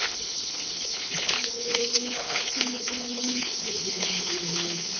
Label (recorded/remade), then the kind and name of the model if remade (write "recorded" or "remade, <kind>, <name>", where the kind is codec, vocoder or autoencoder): remade, codec, HILCodec